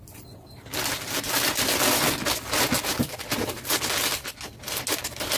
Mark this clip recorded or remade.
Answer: recorded